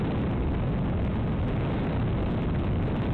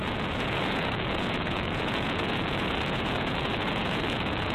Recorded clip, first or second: first